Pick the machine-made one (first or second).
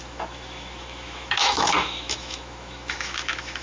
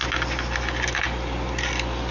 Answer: first